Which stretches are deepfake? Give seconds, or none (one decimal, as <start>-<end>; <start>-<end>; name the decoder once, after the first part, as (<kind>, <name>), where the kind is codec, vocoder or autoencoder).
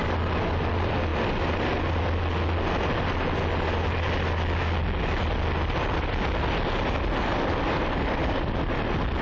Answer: none